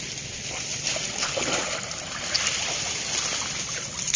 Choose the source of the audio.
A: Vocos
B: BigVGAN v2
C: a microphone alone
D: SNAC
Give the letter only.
C